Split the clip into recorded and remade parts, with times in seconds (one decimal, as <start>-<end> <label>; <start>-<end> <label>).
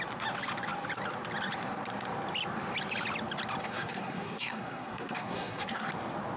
0.0-3.6 recorded; 3.6-5.9 remade; 5.9-6.4 recorded